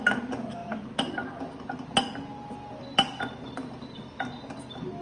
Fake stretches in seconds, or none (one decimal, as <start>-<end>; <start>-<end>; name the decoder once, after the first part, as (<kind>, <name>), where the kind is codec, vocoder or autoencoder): none